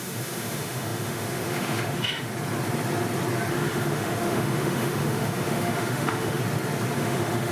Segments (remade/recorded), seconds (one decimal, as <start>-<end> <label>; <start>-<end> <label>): 0.0-2.3 remade; 2.3-3.5 recorded; 3.5-6.4 remade; 6.4-7.0 recorded; 7.0-7.5 remade